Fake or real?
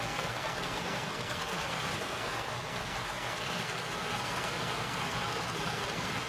fake